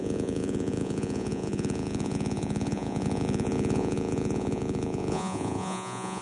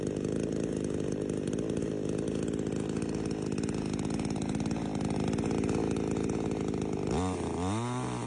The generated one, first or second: first